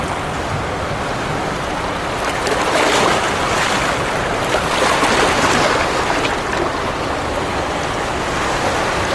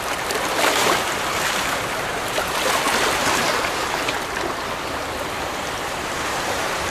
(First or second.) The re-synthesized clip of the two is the second